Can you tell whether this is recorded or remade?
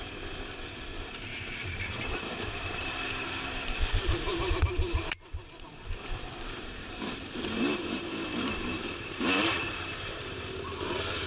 remade